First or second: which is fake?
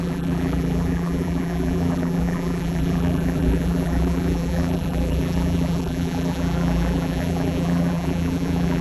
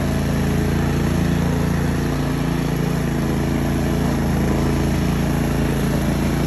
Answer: first